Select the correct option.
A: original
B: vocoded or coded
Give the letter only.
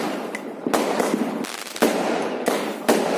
A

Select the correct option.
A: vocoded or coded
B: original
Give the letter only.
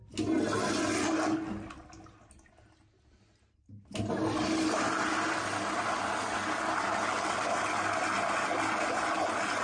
B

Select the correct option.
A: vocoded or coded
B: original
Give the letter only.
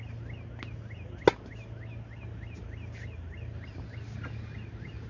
B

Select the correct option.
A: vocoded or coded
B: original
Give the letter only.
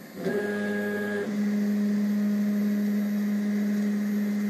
B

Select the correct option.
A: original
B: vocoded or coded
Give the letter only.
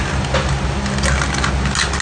A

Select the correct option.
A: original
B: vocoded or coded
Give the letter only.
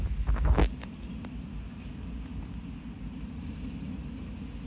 A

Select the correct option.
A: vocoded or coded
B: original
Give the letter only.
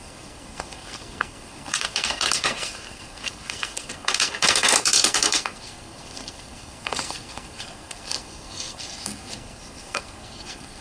A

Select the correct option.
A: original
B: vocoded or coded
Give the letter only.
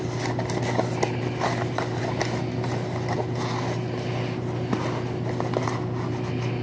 A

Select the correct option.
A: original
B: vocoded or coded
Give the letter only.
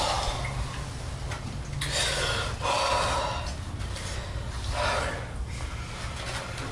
A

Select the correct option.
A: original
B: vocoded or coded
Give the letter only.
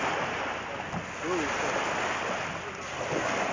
A